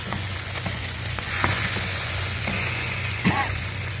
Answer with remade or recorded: remade